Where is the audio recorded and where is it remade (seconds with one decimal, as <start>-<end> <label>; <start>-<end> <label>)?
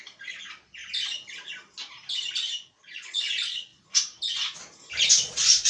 0.0-0.8 remade; 0.8-2.7 recorded; 2.7-3.7 remade; 3.7-5.1 recorded; 5.1-5.7 remade